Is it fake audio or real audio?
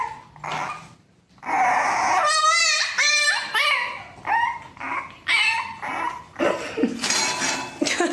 real